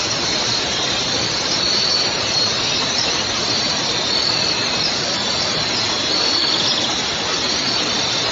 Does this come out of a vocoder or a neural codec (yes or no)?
no